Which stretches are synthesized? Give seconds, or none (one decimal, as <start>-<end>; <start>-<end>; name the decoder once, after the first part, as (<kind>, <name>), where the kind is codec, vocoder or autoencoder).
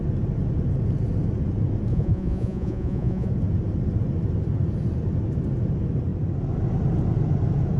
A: 1.9-3.3 (vocoder, Vocos)